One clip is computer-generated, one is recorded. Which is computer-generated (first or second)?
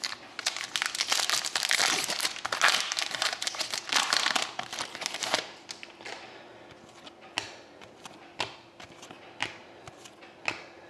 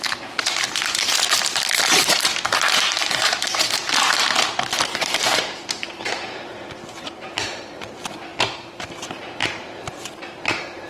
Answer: second